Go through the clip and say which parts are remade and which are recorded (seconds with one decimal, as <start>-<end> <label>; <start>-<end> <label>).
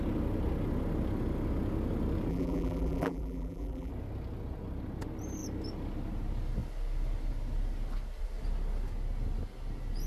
0.0-2.3 recorded; 2.3-3.9 remade; 3.9-10.1 recorded